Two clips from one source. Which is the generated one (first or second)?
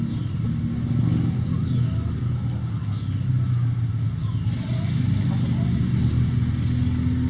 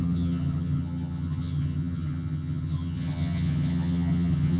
second